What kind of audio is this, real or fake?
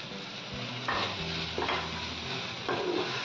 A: real